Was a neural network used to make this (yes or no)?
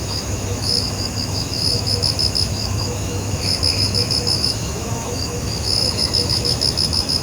yes